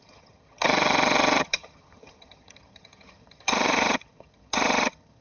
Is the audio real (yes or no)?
no